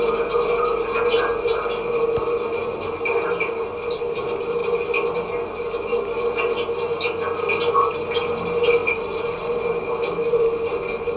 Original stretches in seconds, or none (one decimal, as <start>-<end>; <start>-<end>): 0.0-2.6; 3.5-8.8; 9.7-11.2